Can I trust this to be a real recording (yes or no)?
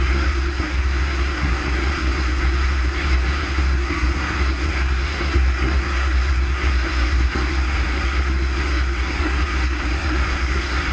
no